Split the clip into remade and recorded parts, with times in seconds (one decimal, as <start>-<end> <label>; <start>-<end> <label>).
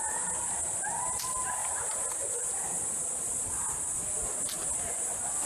0.0-5.5 recorded